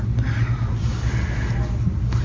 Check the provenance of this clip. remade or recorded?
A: recorded